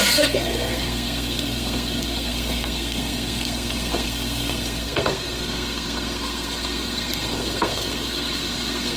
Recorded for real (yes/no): no